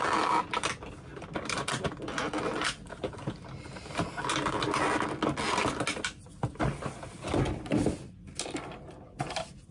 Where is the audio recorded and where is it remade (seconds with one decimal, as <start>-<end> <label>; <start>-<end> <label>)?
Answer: 0.0-1.1 recorded; 1.1-1.9 remade; 1.9-9.7 recorded